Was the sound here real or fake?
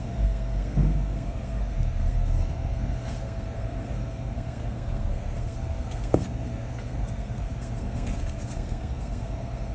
fake